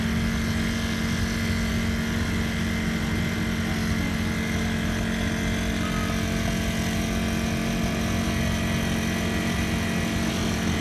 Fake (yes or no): no